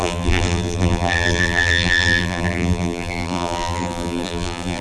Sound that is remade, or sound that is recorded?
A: remade